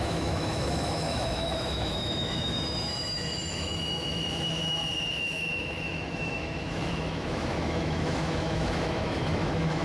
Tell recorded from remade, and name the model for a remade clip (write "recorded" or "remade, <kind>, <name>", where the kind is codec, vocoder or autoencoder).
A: remade, autoencoder, DAC-VAE